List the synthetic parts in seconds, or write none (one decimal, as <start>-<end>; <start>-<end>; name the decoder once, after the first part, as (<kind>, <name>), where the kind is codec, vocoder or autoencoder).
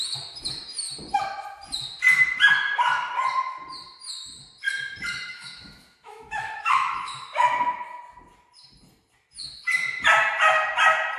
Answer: 5.3-8.0 (autoencoder, DAC-VAE)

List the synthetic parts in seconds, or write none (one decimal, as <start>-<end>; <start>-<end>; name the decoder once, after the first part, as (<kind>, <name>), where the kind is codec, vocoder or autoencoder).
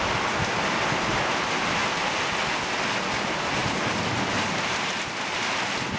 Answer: none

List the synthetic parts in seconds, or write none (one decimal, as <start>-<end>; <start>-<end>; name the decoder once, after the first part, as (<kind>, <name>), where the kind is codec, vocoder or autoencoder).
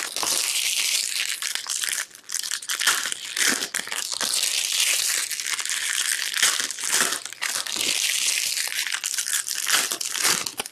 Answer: none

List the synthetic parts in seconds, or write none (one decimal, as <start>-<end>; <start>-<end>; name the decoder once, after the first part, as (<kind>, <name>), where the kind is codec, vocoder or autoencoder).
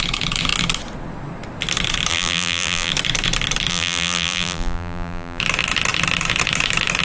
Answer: 2.1-2.9 (vocoder, BigVGAN v2); 3.7-5.4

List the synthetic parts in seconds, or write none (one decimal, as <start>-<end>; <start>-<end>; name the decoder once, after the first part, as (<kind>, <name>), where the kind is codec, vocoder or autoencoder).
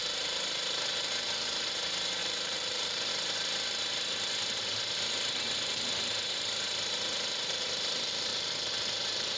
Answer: 2.2-3.1 (vocoder, BigVGAN v2)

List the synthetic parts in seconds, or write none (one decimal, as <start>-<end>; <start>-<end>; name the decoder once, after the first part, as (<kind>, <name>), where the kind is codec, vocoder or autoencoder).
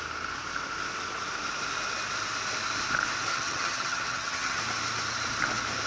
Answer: 3.3-4.6 (vocoder, HiFi-GAN)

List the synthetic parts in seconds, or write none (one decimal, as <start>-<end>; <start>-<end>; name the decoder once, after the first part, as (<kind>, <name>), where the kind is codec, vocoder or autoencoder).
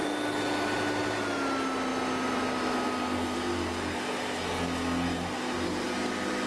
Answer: none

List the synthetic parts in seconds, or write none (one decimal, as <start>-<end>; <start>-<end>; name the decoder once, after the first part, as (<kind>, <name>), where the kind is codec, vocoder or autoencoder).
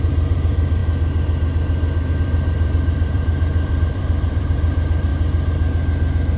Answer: 0.0-0.8 (vocoder, BigVGAN v2); 2.1-5.1